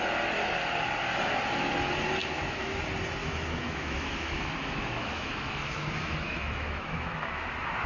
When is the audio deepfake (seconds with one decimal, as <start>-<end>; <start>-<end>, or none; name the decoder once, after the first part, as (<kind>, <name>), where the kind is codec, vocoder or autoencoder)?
2.2-2.8 (autoencoder, DAC-VAE); 3.2-7.4

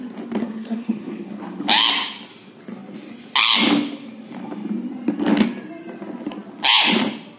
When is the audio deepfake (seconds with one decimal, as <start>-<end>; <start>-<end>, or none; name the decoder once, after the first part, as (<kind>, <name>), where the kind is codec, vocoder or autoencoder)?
0.4-1.4 (codec, SNAC)

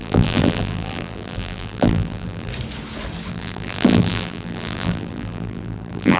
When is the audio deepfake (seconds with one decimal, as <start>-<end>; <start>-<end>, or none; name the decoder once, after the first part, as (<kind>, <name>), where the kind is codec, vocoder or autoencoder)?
0.0-2.5 (vocoder, BigVGAN v2); 3.3-6.2

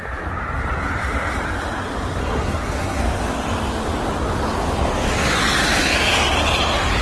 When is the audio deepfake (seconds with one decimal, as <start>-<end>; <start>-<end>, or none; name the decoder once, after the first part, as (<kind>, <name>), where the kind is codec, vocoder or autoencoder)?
2.2-3.0 (codec, SNAC)

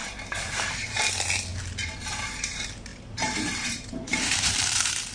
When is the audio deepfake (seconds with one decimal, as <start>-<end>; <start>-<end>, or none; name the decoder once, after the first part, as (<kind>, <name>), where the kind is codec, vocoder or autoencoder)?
0.0-1.0 (vocoder, BigVGAN v2); 2.9-5.1